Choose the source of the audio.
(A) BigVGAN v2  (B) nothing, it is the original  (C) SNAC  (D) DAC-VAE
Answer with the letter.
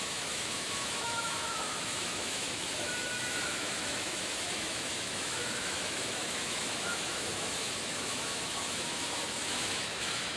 D